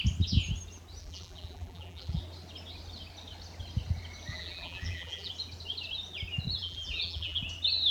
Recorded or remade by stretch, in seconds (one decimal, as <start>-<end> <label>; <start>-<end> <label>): 0.0-1.0 recorded; 1.0-2.2 remade; 2.2-4.3 recorded; 4.3-5.3 remade; 5.3-6.6 recorded; 6.6-7.4 remade; 7.4-7.9 recorded